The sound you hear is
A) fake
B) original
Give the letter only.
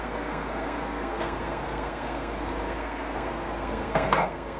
A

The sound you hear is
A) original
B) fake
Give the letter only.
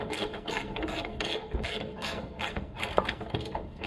B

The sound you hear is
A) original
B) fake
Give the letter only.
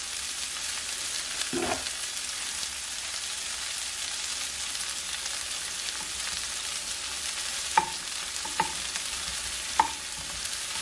A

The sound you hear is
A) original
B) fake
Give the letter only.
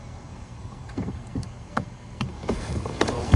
B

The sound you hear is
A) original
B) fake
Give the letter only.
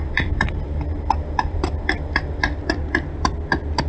A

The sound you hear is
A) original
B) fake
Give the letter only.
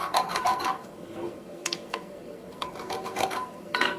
B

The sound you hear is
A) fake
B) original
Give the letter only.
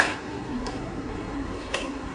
A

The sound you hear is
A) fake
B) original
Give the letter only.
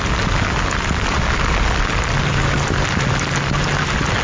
B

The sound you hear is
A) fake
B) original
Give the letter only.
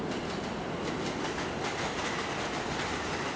B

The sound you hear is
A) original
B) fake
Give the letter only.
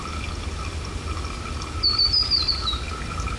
A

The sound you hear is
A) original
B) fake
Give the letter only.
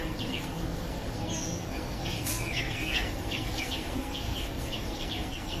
B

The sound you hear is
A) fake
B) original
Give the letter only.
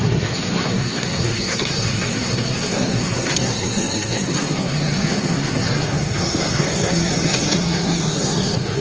A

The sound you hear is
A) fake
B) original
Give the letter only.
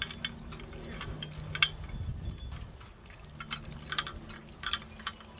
B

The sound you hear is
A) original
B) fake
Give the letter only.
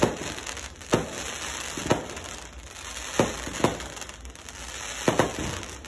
A